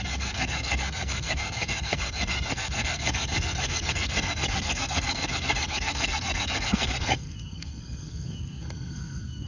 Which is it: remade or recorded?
remade